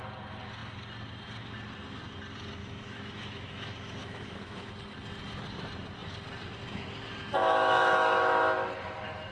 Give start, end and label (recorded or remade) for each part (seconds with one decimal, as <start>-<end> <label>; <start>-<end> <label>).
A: 0.0-2.6 recorded; 2.6-4.7 remade; 4.7-7.4 recorded; 7.4-8.4 remade; 8.4-9.3 recorded